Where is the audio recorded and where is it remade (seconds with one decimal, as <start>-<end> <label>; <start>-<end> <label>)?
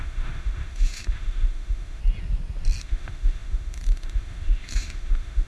0.0-2.0 remade; 2.0-2.8 recorded; 2.8-5.5 remade